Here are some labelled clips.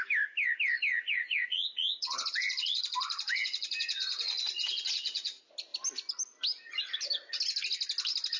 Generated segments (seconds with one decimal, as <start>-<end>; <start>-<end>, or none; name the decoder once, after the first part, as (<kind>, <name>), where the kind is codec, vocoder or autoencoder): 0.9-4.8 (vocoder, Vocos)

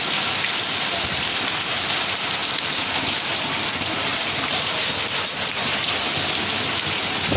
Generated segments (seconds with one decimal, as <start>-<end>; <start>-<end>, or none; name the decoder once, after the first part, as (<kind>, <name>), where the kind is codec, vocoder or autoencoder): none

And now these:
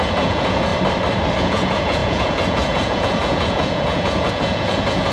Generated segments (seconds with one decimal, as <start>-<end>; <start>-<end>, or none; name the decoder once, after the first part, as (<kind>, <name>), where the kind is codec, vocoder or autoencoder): 0.0-0.7 (vocoder, Vocos); 1.4-5.1

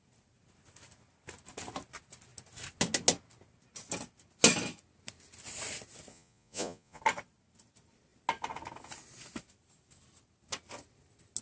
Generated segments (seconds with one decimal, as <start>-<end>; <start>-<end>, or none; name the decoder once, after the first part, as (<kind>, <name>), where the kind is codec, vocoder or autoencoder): 6.1-7.0 (vocoder, Vocos)

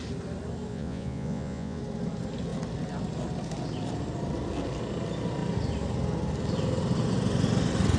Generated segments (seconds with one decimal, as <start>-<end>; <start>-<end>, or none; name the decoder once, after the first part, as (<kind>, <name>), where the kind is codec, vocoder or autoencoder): 0.7-1.8 (vocoder, Vocos)

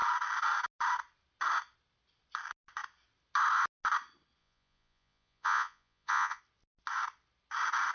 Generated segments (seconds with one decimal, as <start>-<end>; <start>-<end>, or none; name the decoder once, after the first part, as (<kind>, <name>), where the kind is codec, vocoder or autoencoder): 4.4-6.4 (vocoder, Vocos)

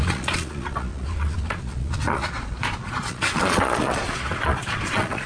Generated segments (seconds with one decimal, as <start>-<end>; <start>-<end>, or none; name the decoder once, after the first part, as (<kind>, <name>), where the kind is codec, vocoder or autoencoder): 0.0-5.3 (vocoder, Vocos)

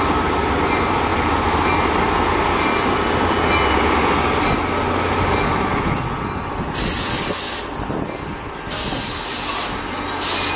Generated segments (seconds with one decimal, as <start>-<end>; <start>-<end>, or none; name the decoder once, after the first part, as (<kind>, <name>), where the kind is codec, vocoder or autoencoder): none